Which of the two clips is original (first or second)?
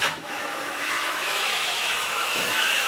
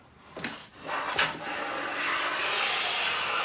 second